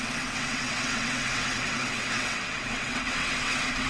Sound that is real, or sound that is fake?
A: fake